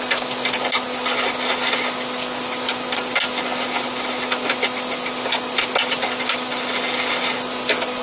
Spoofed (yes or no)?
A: no